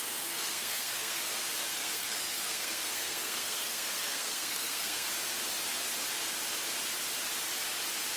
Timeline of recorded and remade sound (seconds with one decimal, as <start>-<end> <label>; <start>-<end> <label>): 0.0-1.2 remade; 1.2-1.7 recorded; 1.7-5.1 remade; 5.1-8.2 recorded